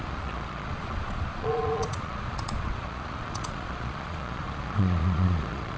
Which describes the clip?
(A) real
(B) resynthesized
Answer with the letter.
B